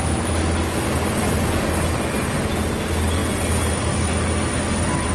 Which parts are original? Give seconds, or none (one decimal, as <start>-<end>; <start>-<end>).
0.0-5.1

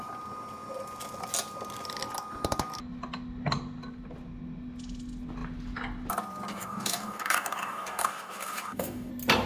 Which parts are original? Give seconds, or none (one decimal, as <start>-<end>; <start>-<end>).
0.0-6.5; 9.1-9.5